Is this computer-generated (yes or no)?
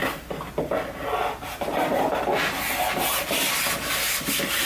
no